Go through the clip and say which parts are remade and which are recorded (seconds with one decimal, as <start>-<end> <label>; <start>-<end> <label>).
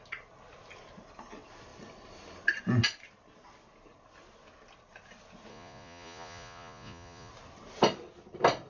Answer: 0.0-5.5 recorded; 5.5-7.3 remade; 7.3-8.7 recorded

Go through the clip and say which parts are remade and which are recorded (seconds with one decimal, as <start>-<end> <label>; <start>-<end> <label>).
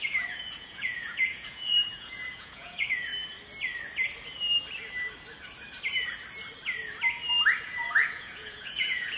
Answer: 0.0-3.1 remade; 3.1-7.6 recorded; 7.6-9.2 remade